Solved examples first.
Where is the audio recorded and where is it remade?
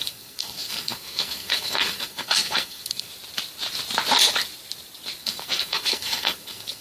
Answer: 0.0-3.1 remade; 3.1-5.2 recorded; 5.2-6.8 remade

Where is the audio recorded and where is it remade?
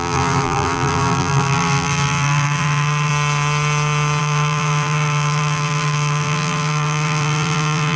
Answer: 0.0-3.1 remade; 3.1-4.2 recorded; 4.2-8.0 remade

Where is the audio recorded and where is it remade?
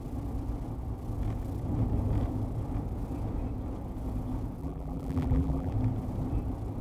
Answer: 0.0-4.6 recorded; 4.6-5.7 remade; 5.7-6.8 recorded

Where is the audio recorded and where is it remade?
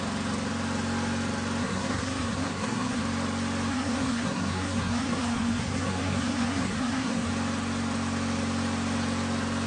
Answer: 0.0-1.6 recorded; 1.6-3.0 remade; 3.0-3.7 recorded; 3.7-7.3 remade; 7.3-9.7 recorded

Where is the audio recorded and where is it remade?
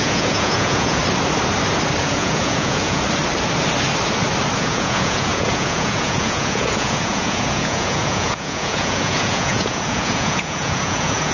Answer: 0.0-1.0 remade; 1.0-2.0 recorded; 2.0-3.0 remade; 3.0-4.6 recorded; 4.6-11.3 remade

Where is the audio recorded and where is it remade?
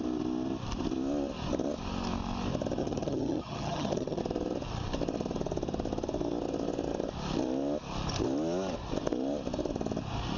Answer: 0.0-2.8 recorded; 2.8-4.2 remade; 4.2-10.4 recorded